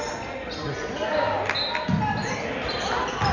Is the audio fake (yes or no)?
no